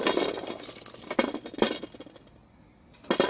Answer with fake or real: real